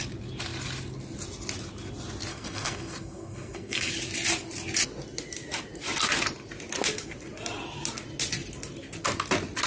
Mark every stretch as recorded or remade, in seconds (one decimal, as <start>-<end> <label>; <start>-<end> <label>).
0.0-2.3 recorded; 2.3-3.9 remade; 3.9-9.7 recorded